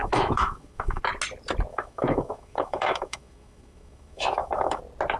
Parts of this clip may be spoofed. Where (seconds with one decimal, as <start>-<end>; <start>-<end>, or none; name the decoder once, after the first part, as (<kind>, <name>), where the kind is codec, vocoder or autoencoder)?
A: 0.0-1.0 (autoencoder, DAC-VAE); 1.7-4.8